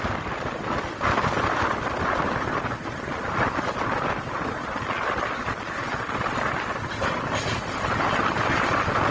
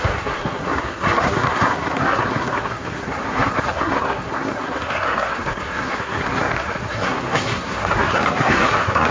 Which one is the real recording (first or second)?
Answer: first